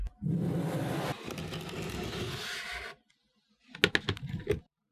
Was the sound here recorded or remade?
recorded